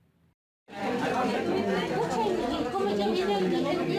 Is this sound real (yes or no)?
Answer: yes